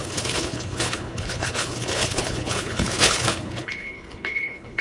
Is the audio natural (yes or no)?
no